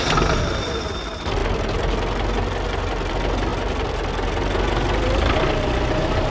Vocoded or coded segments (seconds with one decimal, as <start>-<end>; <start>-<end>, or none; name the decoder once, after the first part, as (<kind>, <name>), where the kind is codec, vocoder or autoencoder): none